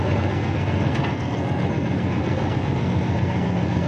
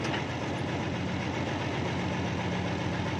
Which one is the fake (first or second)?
first